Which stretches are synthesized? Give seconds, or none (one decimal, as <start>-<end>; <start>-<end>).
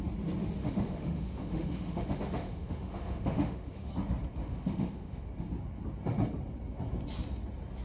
0.6-3.9; 4.4-5.3